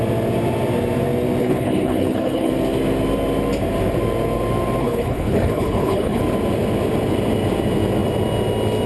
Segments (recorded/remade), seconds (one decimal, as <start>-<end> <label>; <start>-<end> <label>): 0.0-1.4 recorded; 1.4-2.5 remade; 2.5-4.8 recorded; 4.8-6.2 remade; 6.2-8.9 recorded